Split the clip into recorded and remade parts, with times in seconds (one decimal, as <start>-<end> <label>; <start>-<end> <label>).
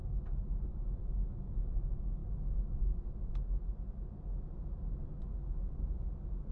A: 0.0-0.7 recorded; 0.7-1.7 remade; 1.7-6.5 recorded